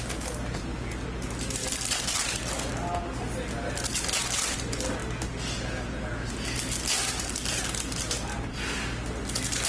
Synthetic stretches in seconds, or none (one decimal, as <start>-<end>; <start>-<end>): none